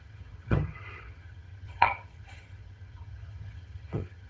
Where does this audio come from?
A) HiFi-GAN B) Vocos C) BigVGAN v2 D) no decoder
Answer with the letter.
A